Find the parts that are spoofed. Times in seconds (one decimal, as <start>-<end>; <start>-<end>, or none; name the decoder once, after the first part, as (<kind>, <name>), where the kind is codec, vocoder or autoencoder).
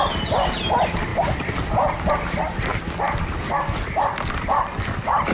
none